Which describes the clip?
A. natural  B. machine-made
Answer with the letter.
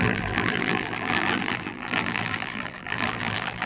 B